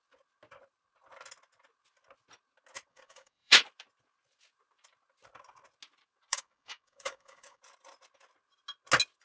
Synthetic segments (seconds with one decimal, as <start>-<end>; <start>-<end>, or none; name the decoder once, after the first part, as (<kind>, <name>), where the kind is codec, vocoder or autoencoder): 2.9-3.6 (codec, DAC); 6.3-7.6